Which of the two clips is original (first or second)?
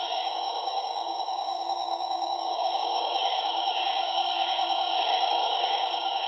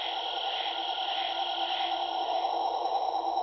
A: second